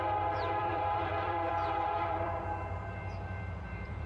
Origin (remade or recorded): remade